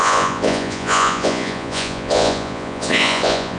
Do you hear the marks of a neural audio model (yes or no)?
yes